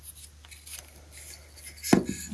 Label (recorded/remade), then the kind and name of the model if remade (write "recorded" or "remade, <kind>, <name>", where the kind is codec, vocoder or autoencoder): recorded